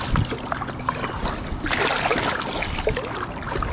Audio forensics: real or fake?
real